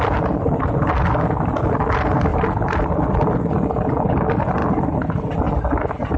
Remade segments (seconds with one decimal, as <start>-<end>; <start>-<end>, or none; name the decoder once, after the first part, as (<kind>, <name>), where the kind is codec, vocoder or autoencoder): none